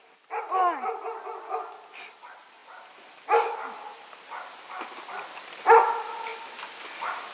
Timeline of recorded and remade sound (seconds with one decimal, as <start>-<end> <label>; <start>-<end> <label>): 0.0-7.3 recorded